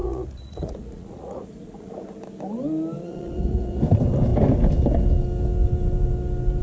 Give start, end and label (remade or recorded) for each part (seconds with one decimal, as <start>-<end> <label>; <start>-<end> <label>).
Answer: 0.0-1.9 remade; 1.9-3.0 recorded; 3.0-3.8 remade; 3.8-6.6 recorded